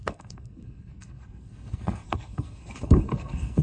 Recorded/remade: remade